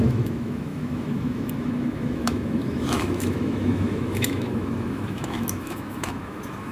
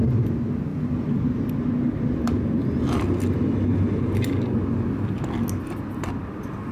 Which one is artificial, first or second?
first